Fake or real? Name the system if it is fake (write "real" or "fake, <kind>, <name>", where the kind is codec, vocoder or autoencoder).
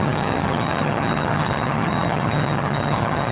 fake, vocoder, HiFi-GAN